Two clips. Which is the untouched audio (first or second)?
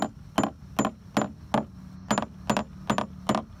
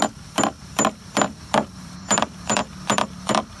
first